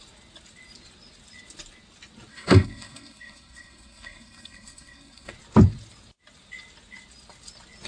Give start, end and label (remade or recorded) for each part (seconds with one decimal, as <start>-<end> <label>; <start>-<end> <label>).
0.0-2.3 recorded; 2.3-5.3 remade; 5.3-7.9 recorded